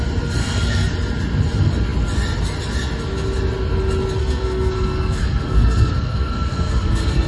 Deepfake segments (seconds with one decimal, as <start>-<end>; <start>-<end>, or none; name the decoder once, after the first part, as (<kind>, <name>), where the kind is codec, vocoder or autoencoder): 0.4-0.9 (codec, SNAC); 4.2-7.3